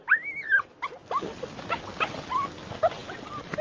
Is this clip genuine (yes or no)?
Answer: yes